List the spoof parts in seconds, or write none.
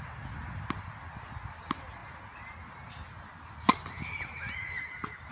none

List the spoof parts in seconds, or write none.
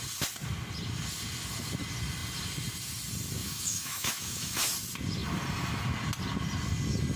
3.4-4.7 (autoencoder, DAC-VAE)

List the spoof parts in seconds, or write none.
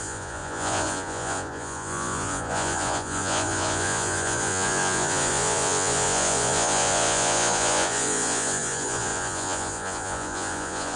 0.0-11.0 (vocoder, Vocos)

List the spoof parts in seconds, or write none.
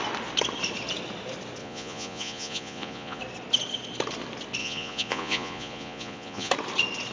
1.6-3.2 (vocoder, Vocos); 4.6-6.5